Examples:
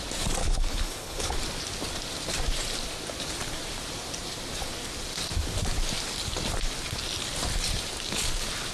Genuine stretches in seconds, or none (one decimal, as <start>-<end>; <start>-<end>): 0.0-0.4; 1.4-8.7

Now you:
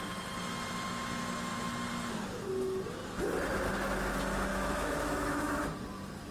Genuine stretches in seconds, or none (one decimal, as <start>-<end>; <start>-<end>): 0.0-4.5; 5.6-6.3

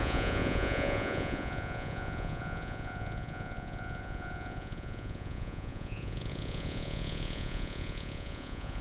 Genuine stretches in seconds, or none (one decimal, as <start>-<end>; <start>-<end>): none

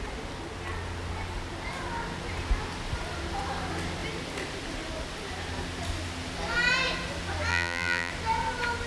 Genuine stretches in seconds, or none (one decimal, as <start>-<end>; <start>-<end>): 0.0-7.5; 8.1-8.9

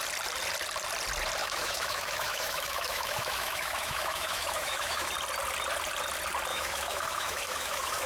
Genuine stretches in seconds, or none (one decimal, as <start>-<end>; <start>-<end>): 0.0-1.4; 5.1-6.5

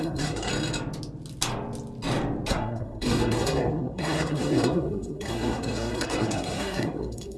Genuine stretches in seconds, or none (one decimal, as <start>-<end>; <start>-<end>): 0.5-2.5